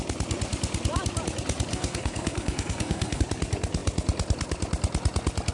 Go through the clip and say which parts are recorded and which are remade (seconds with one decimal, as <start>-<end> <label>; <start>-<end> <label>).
0.0-1.7 recorded; 1.7-3.2 remade; 3.2-5.5 recorded